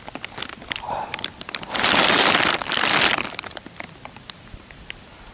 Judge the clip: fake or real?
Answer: fake